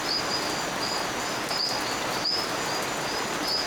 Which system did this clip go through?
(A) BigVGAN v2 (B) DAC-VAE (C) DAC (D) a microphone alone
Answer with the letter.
D